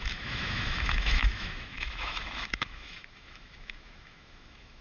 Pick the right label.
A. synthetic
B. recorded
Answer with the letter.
A